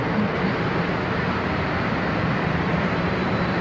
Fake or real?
fake